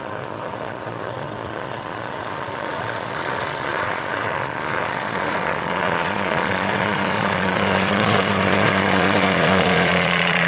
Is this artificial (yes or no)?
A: yes